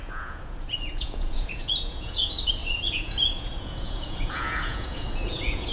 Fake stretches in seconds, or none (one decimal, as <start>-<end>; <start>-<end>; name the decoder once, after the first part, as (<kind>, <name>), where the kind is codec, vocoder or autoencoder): 0.0-5.7 (vocoder, Vocos)